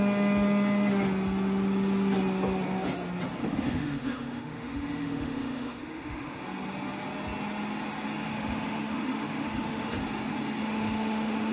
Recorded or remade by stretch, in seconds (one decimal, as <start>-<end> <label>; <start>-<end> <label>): 0.0-3.4 recorded; 3.4-6.4 remade; 6.4-8.3 recorded; 8.3-10.0 remade; 10.0-10.6 recorded; 10.6-11.5 remade